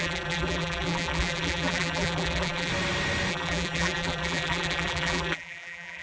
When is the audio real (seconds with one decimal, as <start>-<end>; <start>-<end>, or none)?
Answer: 2.7-3.3